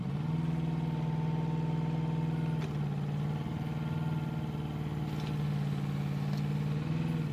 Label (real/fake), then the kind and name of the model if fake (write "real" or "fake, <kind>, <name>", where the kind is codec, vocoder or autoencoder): real